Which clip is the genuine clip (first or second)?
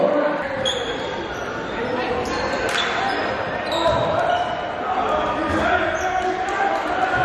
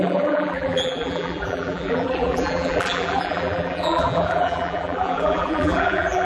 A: first